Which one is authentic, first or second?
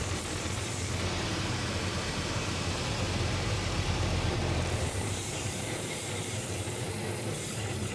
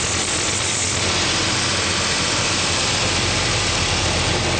second